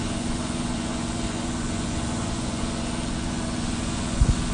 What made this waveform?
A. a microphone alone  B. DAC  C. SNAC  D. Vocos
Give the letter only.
D